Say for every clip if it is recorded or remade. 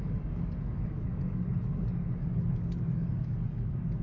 remade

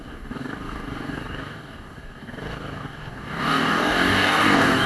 remade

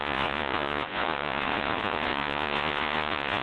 remade